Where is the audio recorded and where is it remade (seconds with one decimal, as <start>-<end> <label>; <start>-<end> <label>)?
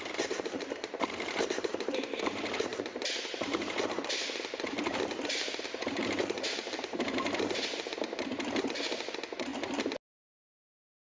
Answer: 0.0-9.5 remade; 9.5-10.4 recorded; 10.4-11.1 remade